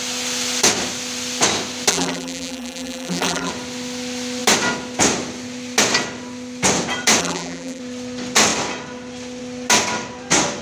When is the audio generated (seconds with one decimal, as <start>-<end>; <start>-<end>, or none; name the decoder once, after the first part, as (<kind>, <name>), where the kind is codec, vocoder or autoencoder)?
1.9-3.5 (vocoder, BigVGAN v2); 7.2-7.8